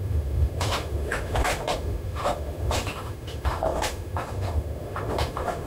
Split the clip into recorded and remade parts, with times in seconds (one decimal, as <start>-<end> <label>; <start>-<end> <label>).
0.0-5.7 remade